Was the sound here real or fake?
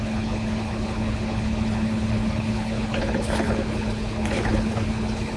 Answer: fake